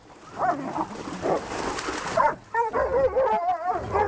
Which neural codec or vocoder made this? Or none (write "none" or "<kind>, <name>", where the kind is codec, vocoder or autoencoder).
none